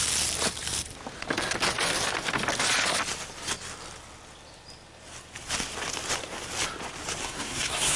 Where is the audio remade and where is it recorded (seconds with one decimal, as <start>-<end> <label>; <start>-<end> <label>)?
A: 0.0-7.2 recorded; 7.2-8.0 remade